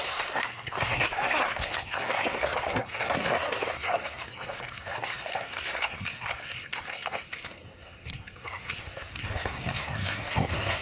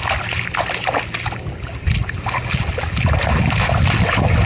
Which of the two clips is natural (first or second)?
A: second